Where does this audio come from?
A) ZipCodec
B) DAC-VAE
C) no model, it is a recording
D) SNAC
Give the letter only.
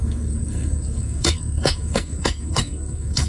D